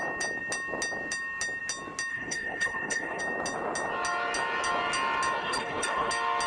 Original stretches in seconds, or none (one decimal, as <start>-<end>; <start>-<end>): 0.0-2.1; 3.2-5.4; 6.1-6.5